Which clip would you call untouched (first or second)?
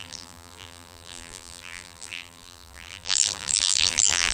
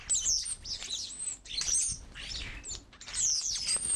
second